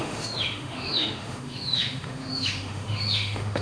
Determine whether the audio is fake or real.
fake